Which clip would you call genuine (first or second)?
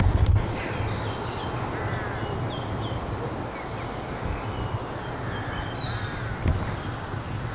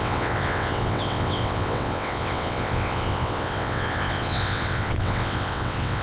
first